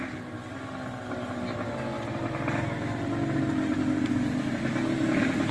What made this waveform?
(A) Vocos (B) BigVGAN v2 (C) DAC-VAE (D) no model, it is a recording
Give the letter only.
D